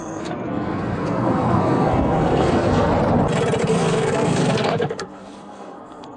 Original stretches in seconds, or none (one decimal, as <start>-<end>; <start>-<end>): 2.9-3.7